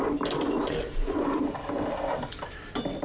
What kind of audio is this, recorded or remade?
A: recorded